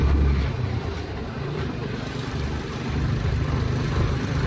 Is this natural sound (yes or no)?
yes